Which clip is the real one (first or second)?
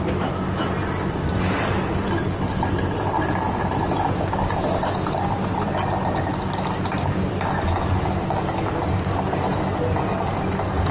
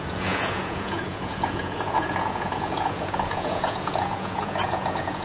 first